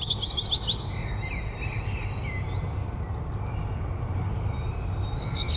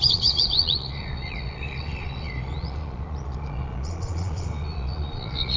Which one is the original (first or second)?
first